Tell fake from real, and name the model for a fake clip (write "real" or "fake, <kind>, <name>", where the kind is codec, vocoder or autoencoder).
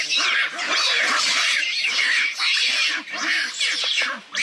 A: real